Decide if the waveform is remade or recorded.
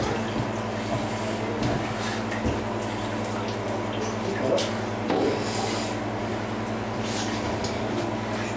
recorded